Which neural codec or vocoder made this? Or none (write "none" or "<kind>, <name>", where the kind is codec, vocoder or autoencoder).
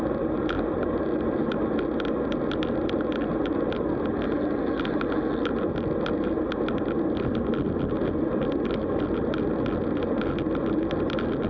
none